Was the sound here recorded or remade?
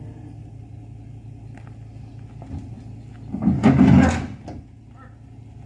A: recorded